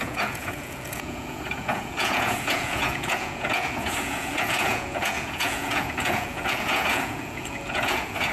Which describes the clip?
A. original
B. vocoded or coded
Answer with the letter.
B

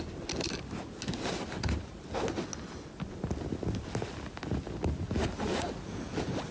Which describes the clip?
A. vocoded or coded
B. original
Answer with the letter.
B